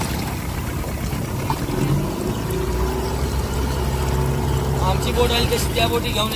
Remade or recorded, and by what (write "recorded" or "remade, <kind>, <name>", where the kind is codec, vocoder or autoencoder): recorded